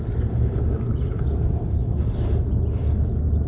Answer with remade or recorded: recorded